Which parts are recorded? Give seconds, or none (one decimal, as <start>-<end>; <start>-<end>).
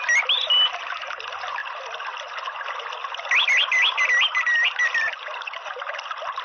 0.0-6.4